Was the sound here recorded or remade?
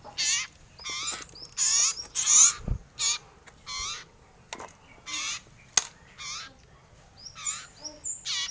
recorded